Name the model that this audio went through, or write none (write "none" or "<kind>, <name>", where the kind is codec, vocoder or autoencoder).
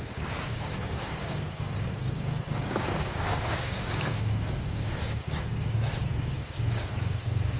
codec, DAC